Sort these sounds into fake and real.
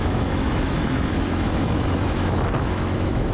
fake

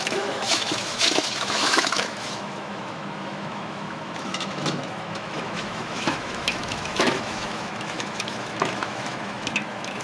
fake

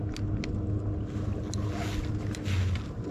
real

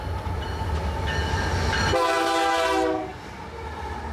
real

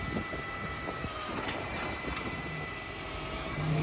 real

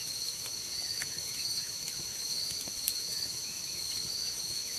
fake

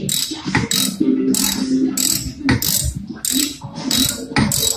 real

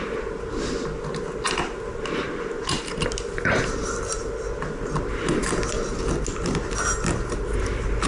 real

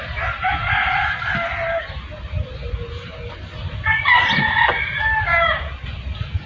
real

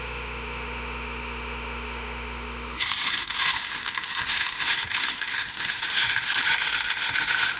fake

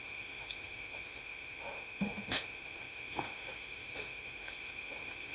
fake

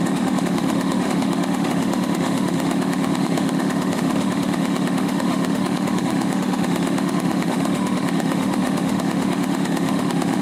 fake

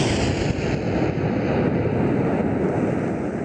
real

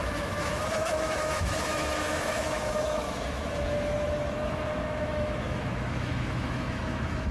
fake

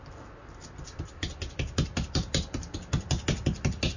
real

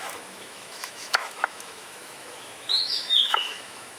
fake